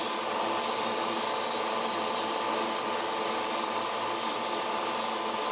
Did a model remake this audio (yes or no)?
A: no